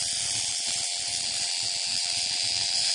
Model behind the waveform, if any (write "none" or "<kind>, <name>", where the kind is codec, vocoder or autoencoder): vocoder, BigVGAN v2